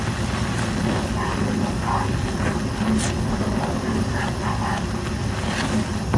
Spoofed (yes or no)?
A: no